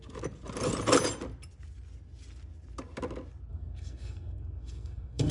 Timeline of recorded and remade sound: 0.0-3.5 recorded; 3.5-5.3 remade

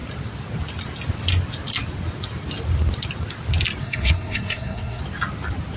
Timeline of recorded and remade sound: 0.0-3.8 recorded; 3.8-5.0 remade; 5.0-5.8 recorded

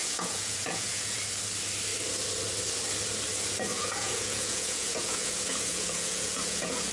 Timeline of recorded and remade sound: 0.0-1.2 remade; 1.2-3.7 recorded; 3.7-6.9 remade